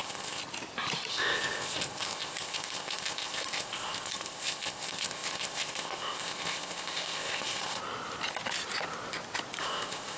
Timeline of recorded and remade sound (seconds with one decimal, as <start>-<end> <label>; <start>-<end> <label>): 0.0-0.4 remade; 0.4-1.1 recorded; 1.1-7.8 remade; 7.8-9.6 recorded; 9.6-10.2 remade